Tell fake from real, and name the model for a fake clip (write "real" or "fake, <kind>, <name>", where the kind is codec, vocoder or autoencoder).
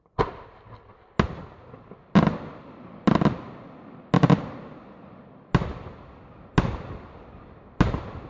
real